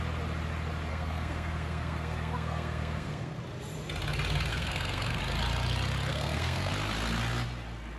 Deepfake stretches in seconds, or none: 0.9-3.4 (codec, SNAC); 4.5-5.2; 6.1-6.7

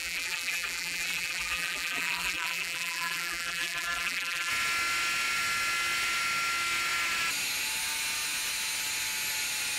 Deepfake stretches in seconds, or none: 0.0-4.5 (vocoder, BigVGAN v2)